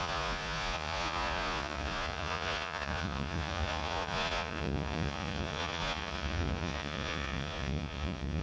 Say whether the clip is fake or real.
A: fake